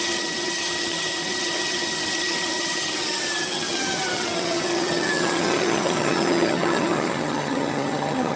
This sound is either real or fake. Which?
fake